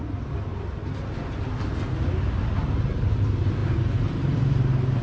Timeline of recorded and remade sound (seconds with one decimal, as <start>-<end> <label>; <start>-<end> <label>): 0.0-5.0 recorded